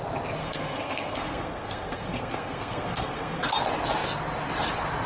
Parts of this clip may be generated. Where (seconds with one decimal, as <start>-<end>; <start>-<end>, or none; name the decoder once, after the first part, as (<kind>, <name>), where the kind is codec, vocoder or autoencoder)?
0.4-3.5 (codec, SNAC)